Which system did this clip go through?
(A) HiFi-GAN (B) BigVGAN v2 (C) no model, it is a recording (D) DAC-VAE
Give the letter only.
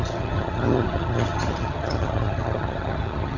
A